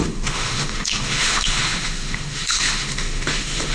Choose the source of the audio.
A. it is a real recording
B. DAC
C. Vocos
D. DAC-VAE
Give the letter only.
D